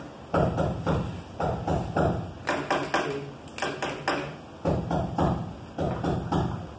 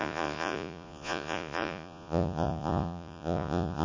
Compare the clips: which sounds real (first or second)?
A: first